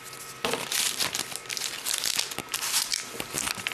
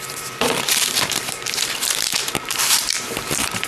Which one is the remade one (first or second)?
second